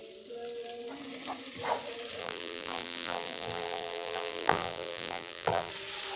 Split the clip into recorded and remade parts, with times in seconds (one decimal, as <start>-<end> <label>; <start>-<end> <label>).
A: 0.0-2.2 recorded; 2.2-5.7 remade; 5.7-6.2 recorded